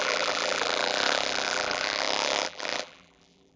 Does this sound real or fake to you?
fake